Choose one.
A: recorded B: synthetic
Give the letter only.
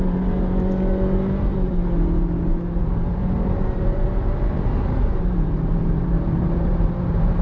B